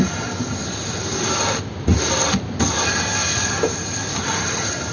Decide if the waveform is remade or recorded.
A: recorded